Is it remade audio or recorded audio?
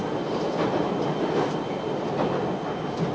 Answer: recorded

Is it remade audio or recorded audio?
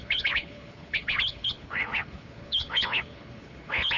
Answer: remade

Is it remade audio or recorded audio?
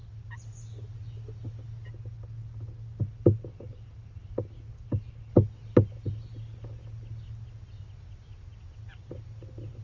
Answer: recorded